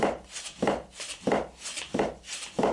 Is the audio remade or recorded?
recorded